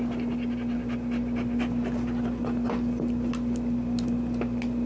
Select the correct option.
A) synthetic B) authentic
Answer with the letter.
B